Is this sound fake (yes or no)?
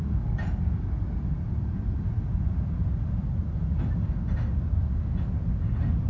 no